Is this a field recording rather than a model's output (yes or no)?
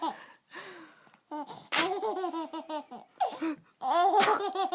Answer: yes